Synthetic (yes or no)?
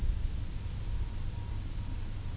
no